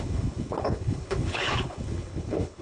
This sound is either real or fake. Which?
fake